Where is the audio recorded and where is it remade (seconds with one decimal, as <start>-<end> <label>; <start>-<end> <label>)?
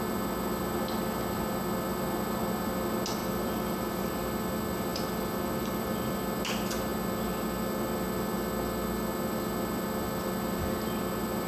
0.0-3.2 recorded; 3.2-4.1 remade; 4.1-4.9 recorded; 4.9-5.9 remade; 5.9-11.5 recorded